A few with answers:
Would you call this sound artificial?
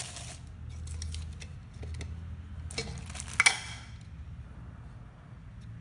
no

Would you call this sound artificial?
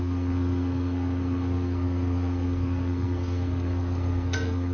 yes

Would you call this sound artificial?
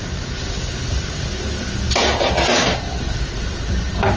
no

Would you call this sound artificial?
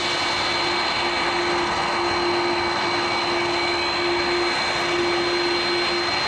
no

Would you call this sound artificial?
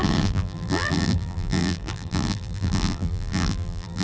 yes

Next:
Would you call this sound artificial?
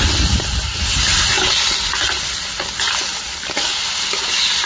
no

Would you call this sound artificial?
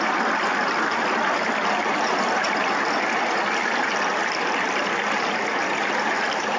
no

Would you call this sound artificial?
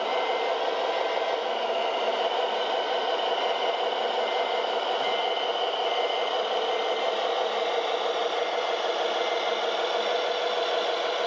no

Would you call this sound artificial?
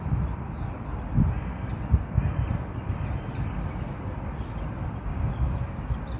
no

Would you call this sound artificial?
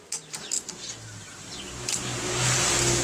no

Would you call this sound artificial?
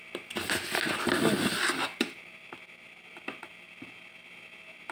no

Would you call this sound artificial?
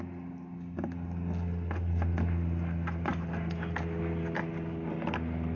no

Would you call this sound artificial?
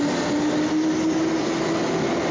no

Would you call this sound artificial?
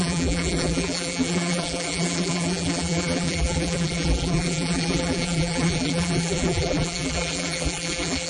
yes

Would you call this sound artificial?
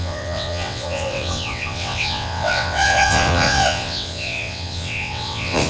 yes